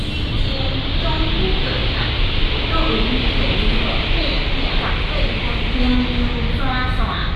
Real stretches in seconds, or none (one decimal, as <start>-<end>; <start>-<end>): 0.0-7.4